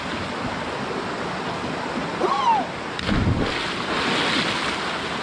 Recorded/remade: recorded